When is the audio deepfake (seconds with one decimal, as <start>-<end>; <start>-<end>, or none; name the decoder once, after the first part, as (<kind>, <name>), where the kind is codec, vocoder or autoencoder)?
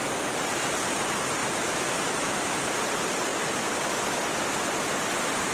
0.0-1.4 (vocoder, BigVGAN v2); 2.8-3.3; 4.7-5.5